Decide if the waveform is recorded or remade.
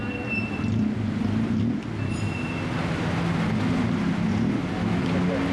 recorded